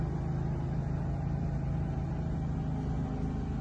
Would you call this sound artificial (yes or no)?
no